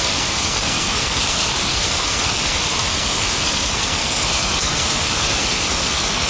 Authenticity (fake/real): fake